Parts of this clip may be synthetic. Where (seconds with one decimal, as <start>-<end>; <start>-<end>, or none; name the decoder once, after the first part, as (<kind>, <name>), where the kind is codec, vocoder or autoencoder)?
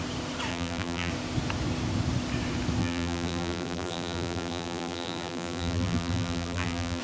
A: 0.5-1.1 (vocoder, BigVGAN v2); 2.8-7.0